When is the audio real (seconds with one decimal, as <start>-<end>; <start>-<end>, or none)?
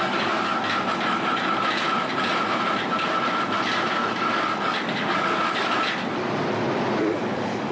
0.5-3.9; 5.4-7.0